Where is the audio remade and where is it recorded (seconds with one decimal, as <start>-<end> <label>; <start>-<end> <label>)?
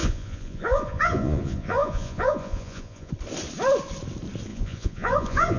0.0-3.1 remade; 3.1-4.5 recorded; 4.5-5.6 remade